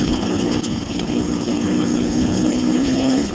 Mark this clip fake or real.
fake